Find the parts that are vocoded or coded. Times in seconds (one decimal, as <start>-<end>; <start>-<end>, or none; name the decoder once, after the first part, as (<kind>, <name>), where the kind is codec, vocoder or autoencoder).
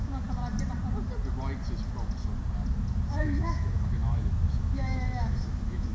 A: 0.0-0.4 (autoencoder, DAC-VAE); 3.2-5.9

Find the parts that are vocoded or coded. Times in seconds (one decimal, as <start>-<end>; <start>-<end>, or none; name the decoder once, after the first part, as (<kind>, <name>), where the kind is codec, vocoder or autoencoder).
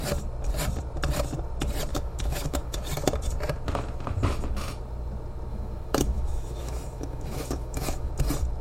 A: 1.9-2.8 (autoencoder, DAC-VAE); 5.5-8.1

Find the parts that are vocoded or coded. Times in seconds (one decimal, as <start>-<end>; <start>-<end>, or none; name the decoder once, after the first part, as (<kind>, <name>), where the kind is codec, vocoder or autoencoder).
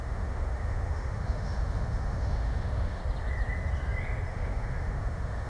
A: 0.0-3.0 (autoencoder, DAC-VAE); 4.3-5.5